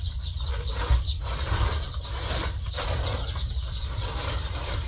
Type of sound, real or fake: real